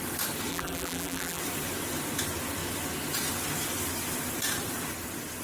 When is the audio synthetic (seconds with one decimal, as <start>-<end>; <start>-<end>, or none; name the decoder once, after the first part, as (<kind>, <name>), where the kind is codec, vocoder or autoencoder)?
0.5-1.4 (vocoder, BigVGAN v2)